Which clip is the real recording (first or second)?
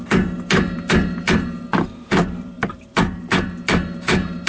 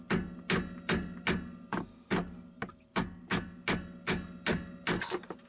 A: second